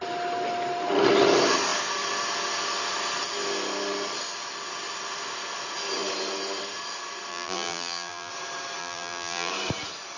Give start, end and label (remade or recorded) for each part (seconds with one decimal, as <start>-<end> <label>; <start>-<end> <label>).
0.0-7.3 recorded; 7.3-8.3 remade; 8.3-8.8 recorded; 8.8-9.5 remade; 9.5-10.2 recorded